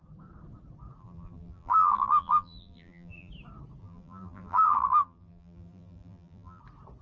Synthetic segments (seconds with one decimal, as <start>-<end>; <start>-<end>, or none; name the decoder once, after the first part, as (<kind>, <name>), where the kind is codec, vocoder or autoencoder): 1.0-3.3 (vocoder, BigVGAN v2); 3.8-6.6